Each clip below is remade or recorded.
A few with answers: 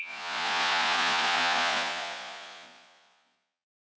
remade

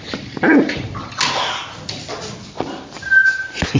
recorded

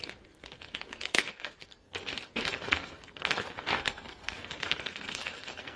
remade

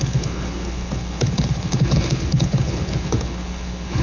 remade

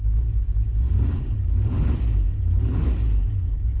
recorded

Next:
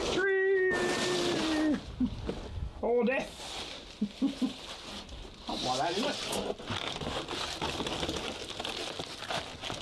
recorded